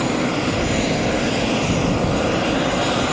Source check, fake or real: real